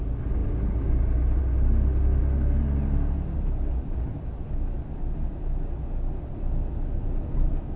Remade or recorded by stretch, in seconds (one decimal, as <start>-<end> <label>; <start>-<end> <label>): 0.0-7.8 recorded